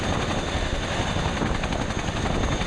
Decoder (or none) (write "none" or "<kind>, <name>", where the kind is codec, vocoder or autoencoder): none